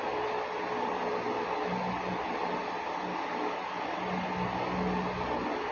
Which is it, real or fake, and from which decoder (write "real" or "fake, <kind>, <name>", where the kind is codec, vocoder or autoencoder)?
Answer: real